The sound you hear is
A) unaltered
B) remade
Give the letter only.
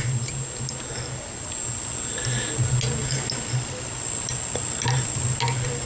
A